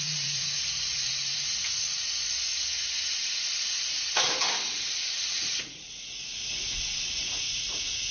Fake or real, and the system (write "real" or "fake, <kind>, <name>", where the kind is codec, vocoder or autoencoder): fake, vocoder, Vocos